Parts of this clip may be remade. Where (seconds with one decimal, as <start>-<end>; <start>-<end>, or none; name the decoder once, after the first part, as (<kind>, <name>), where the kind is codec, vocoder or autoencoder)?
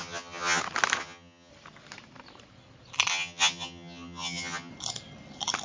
0.0-0.6 (vocoder, HiFi-GAN); 1.0-1.5; 3.1-4.7